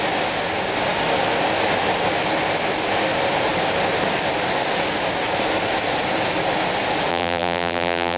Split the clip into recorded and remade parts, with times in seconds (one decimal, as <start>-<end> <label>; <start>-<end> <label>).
0.0-7.1 recorded; 7.1-8.2 remade